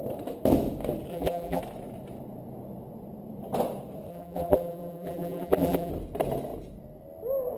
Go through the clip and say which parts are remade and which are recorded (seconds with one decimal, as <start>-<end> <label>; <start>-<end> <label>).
0.0-1.1 recorded; 1.1-1.6 remade; 1.6-4.1 recorded; 4.1-5.9 remade; 5.9-7.6 recorded